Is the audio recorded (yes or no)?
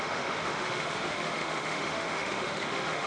no